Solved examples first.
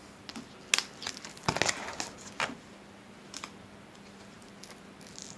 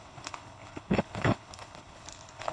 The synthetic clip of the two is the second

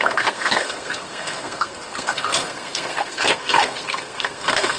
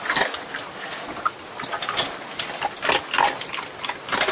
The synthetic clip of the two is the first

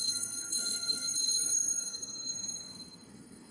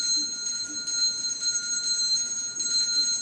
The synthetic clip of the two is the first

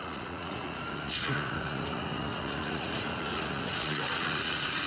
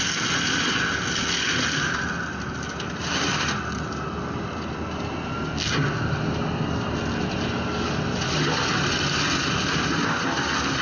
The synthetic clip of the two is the first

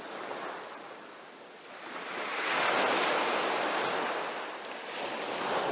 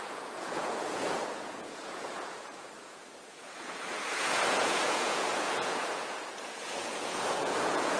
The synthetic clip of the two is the second